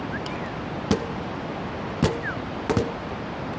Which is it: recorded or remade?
recorded